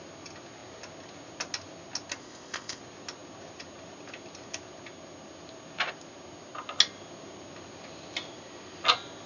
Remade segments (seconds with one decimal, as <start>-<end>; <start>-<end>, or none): 2.2-2.8